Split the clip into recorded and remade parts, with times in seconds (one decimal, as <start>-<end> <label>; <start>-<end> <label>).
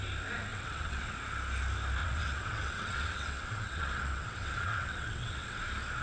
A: 0.0-0.5 recorded; 0.5-1.1 remade; 1.1-2.0 recorded; 2.0-5.6 remade; 5.6-6.0 recorded